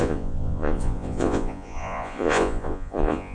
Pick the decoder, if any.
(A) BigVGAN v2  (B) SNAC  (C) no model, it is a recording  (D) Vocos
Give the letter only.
D